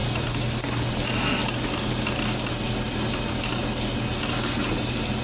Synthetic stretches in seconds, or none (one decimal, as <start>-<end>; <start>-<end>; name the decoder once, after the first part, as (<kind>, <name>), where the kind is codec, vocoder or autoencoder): none